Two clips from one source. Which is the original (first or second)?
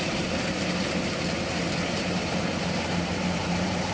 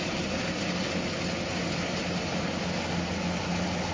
second